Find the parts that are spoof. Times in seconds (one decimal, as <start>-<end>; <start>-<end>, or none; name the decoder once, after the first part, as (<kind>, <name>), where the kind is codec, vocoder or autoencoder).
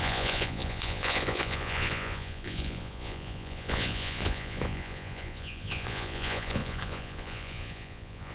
0.0-8.3 (vocoder, Vocos)